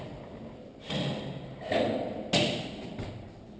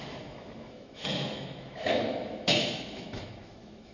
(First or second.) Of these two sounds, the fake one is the second